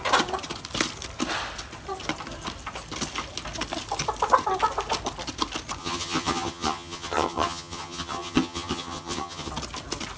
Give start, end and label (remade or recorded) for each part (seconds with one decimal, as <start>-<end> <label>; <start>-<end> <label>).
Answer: 0.0-5.8 recorded; 5.8-9.5 remade; 9.5-10.2 recorded